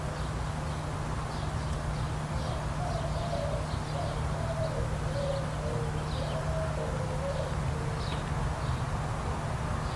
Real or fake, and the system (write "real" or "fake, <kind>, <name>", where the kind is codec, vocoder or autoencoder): real